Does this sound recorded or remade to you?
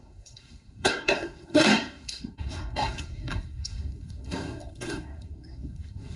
remade